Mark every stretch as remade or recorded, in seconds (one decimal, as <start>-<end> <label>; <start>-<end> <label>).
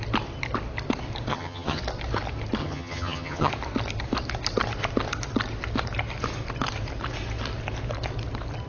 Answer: 0.0-1.3 recorded; 1.3-1.8 remade; 1.8-2.6 recorded; 2.6-3.5 remade; 3.5-8.7 recorded